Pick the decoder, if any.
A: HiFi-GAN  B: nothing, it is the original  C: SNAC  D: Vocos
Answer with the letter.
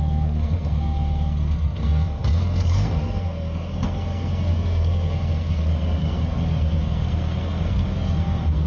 C